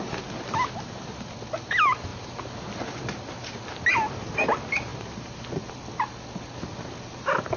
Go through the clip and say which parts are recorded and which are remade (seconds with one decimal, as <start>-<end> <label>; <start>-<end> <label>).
0.0-7.6 recorded